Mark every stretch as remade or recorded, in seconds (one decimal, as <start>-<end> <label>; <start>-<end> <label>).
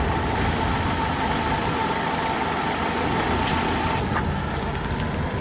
0.0-5.4 recorded